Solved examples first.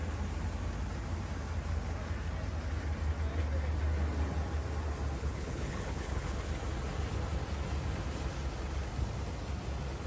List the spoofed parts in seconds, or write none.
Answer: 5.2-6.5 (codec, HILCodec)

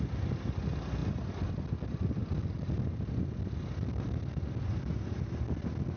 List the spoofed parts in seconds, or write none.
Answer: none

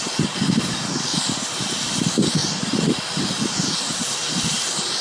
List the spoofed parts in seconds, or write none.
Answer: none

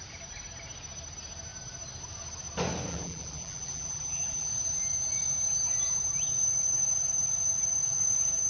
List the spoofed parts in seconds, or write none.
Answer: 2.9-4.5 (vocoder, BigVGAN v2)

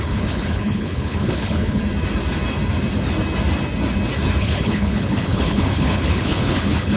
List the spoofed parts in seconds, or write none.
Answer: 0.0-1.8 (codec, HILCodec); 4.4-7.0

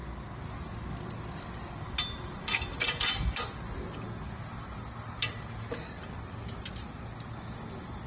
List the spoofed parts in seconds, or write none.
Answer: none

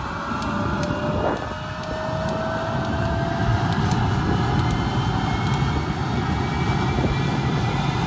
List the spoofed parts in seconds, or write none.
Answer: 3.5-4.1 (vocoder, BigVGAN v2)

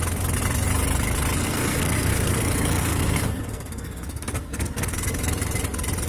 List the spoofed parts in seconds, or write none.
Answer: 1.4-5.1 (codec, SNAC)